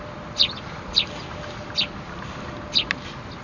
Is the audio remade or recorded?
recorded